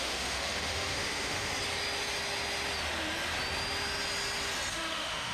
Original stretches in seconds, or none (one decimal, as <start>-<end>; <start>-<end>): 1.5-4.7